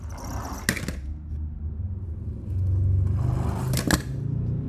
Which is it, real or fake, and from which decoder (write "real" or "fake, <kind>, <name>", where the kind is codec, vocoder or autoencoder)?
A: real